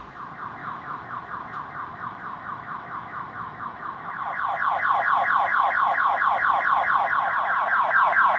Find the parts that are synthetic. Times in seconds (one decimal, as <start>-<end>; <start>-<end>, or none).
0.6-1.2; 1.9-4.1; 5.5-6.2